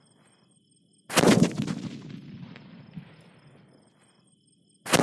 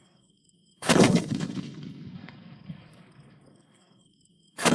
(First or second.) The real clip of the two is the first